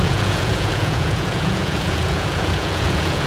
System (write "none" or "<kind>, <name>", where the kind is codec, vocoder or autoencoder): vocoder, Vocos